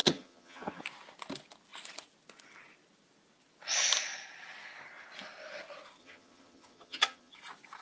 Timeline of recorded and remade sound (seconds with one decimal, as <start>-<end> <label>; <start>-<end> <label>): 0.0-0.8 remade; 0.8-6.0 recorded; 6.0-7.3 remade; 7.3-7.8 recorded